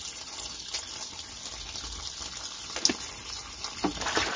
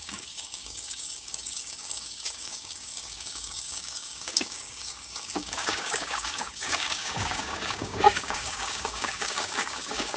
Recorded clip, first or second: first